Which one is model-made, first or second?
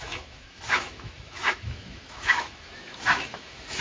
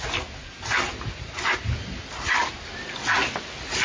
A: first